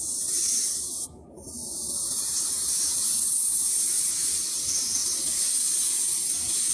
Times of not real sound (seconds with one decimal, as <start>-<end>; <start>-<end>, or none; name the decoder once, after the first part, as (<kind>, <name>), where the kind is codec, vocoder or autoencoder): 0.0-1.6 (vocoder, BigVGAN v2); 2.2-5.0; 6.3-6.7

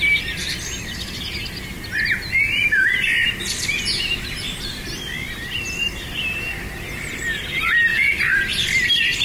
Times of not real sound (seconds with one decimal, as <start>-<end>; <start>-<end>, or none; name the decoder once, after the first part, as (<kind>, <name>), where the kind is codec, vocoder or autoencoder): 2.2-6.6 (vocoder, BigVGAN v2); 7.9-9.2

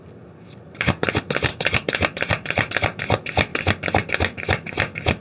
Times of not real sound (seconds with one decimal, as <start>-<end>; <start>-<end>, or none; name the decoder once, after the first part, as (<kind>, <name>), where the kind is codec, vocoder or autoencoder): 1.5-2.7 (vocoder, BigVGAN v2)

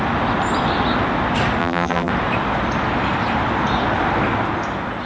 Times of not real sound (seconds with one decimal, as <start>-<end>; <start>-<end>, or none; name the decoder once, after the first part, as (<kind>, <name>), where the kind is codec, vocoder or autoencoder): 1.6-2.1 (vocoder, BigVGAN v2)

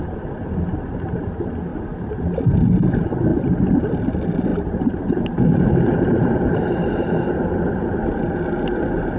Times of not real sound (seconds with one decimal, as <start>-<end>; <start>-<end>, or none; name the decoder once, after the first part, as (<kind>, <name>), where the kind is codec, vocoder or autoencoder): 4.5-7.9 (vocoder, BigVGAN v2)